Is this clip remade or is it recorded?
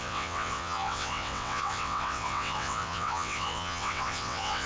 remade